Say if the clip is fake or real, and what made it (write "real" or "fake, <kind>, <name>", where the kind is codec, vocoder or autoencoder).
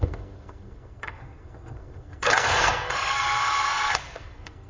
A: fake, codec, SNAC